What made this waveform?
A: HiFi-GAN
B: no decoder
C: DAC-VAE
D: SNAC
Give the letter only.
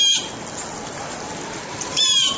B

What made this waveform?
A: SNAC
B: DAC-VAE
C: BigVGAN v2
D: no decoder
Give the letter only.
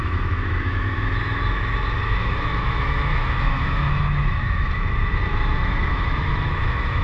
B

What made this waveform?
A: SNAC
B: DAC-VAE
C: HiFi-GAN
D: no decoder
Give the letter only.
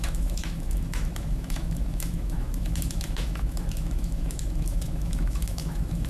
B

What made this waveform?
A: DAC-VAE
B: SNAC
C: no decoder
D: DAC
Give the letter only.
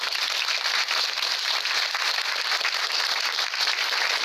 C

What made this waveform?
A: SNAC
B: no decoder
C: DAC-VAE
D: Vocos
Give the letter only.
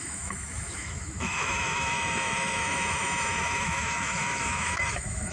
C